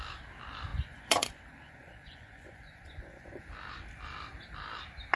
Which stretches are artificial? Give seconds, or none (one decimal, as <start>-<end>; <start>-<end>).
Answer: 0.7-3.4